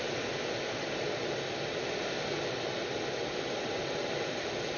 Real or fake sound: real